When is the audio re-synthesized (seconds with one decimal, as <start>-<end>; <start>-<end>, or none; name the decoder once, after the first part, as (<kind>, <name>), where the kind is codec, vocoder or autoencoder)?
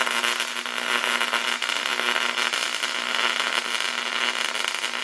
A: none